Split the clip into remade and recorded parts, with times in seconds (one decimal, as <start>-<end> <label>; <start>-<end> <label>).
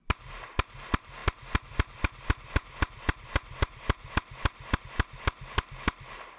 0.0-6.4 recorded